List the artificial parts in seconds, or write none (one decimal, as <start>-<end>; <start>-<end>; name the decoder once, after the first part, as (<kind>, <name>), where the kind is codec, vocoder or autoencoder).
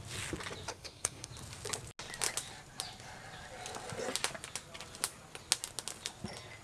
0.7-1.3 (codec, SNAC)